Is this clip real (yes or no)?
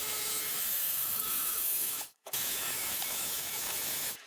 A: no